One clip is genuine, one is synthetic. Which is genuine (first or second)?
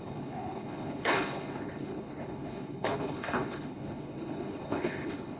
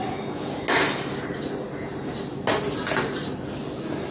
second